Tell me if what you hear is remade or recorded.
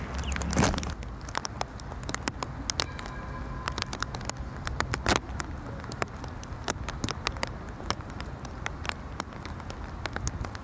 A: recorded